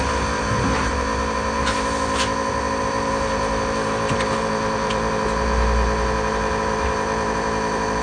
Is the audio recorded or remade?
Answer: remade